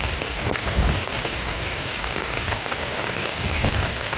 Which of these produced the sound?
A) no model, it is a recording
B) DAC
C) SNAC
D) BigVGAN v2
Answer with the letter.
B